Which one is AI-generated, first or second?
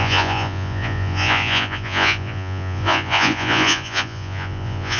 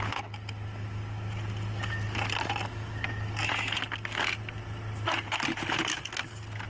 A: first